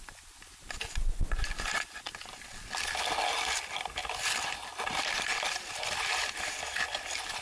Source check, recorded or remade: recorded